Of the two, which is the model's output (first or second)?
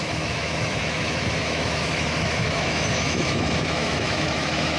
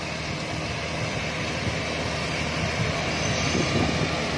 first